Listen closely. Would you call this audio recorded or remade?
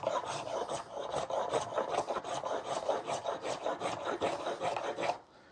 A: remade